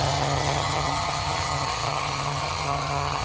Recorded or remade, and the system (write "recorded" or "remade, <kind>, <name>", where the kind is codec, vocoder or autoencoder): remade, vocoder, HiFi-GAN